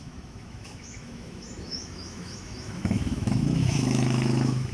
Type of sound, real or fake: fake